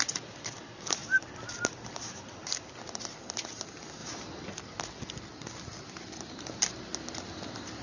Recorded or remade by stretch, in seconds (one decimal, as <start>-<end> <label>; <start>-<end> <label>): 0.0-7.8 recorded